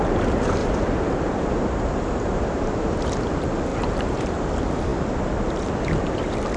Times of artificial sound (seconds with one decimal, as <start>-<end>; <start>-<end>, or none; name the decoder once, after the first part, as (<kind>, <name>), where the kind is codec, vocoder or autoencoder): 0.6-2.8 (vocoder, BigVGAN v2); 3.7-4.5